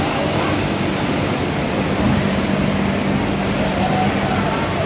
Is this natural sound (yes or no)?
yes